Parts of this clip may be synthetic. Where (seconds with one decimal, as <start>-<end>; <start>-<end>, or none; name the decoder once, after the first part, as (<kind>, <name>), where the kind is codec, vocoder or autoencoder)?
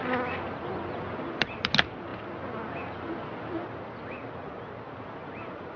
none